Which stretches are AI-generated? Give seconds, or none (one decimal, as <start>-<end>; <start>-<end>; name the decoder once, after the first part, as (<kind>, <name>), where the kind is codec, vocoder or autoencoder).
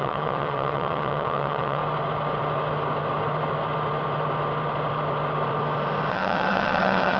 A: 0.0-1.8 (vocoder, WaveNeXt); 6.1-7.2